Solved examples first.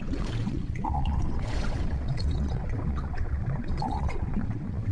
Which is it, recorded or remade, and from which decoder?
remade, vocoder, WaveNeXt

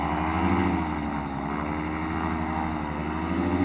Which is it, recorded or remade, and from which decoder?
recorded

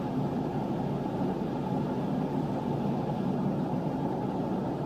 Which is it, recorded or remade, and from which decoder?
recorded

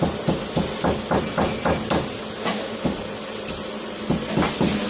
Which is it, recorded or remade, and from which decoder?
recorded